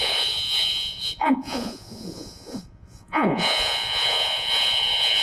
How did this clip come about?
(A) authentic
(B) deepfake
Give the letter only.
B